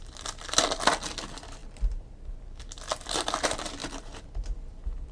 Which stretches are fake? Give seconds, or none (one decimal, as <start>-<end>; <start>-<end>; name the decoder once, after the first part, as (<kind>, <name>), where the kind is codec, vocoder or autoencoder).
none